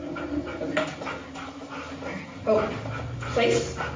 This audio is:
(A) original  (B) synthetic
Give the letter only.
A